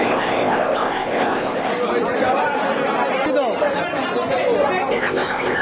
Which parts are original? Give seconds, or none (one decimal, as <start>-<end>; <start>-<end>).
1.7-4.9